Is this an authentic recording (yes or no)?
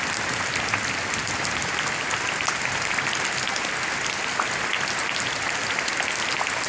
yes